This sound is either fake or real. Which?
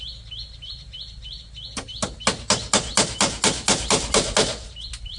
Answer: real